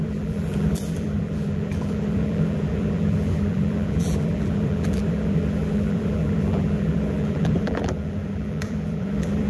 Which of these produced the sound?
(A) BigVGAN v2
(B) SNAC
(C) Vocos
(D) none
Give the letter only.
A